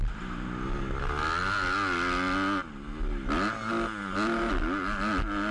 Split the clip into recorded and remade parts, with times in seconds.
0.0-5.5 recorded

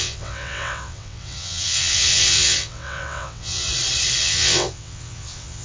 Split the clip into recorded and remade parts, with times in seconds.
0.0-3.7 remade; 3.7-4.2 recorded; 4.2-5.6 remade